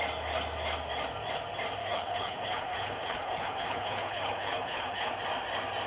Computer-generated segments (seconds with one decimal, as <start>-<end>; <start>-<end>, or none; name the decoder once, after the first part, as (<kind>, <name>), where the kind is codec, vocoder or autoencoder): 1.8-5.1 (codec, HILCodec)